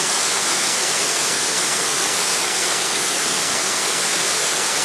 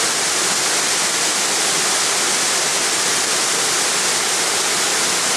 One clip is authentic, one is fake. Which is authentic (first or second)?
second